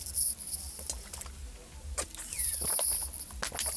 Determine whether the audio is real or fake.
real